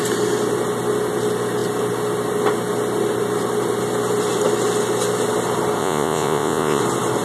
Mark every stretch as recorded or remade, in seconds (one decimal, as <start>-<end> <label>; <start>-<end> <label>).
0.0-5.8 recorded; 5.8-6.8 remade; 6.8-7.2 recorded